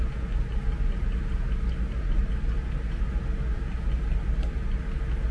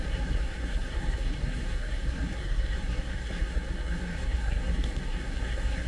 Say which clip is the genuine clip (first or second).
first